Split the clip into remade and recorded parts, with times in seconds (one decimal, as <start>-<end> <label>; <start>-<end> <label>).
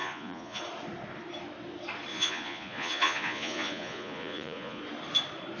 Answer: 0.0-0.6 remade; 0.6-2.1 recorded; 2.1-4.8 remade; 4.8-5.6 recorded